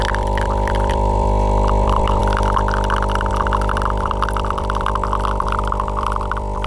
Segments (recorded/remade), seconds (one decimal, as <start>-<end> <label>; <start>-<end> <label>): 0.0-2.2 remade; 2.2-3.3 recorded; 3.3-6.7 remade